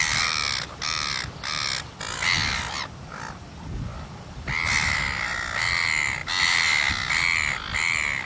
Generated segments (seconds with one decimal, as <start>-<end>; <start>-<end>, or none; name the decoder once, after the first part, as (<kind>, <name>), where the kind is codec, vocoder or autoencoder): none